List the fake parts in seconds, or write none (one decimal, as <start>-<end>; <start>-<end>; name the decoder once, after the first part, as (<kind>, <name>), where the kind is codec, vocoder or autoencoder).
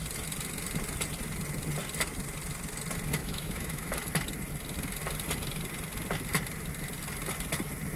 3.2-3.9 (autoencoder, DAC-VAE)